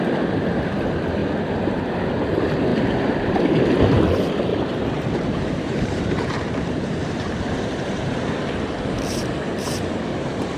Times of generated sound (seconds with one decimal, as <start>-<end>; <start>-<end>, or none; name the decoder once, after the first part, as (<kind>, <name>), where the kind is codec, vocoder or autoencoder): 2.7-3.5 (vocoder, BigVGAN v2); 4.5-8.3; 9.5-10.6